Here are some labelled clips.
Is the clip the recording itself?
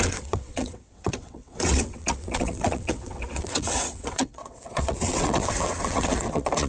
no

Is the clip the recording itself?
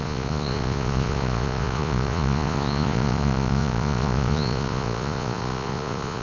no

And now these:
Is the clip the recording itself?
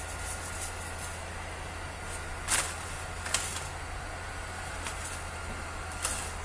yes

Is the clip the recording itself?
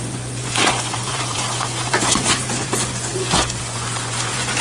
no